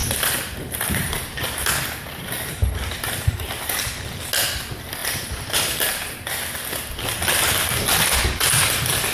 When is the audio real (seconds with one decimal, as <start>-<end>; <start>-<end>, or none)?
3.6-5.0; 6.4-9.1